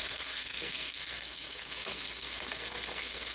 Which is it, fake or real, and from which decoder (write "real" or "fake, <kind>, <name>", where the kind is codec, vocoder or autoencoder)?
fake, codec, SNAC